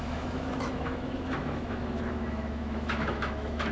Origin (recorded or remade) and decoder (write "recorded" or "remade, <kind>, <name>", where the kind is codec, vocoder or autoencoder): remade, autoencoder, DAC-VAE